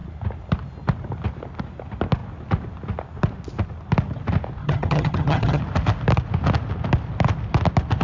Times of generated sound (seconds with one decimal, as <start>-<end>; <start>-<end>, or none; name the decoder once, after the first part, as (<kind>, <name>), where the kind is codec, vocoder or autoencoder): 4.6-5.6 (vocoder, HiFi-GAN)